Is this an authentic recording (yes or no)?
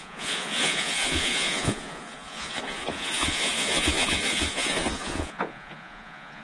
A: no